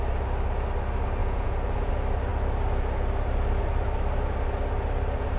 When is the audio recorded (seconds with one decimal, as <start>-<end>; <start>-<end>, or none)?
0.0-1.2; 1.9-5.4